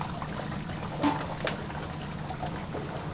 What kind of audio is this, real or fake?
real